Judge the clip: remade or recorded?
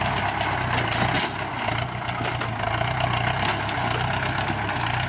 recorded